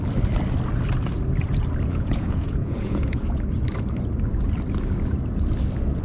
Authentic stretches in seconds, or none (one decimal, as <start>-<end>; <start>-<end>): 0.0-1.9; 3.4-6.0